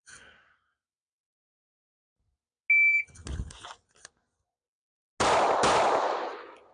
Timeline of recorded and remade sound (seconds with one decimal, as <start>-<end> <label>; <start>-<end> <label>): 0.0-6.7 recorded